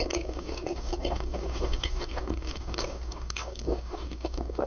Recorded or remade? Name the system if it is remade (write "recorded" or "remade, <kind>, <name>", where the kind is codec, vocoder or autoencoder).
remade, codec, DAC